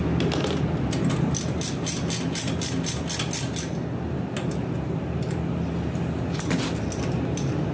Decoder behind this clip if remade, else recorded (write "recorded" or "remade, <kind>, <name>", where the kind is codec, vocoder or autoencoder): recorded